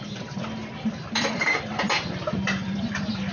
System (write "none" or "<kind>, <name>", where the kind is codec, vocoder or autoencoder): vocoder, BigVGAN v2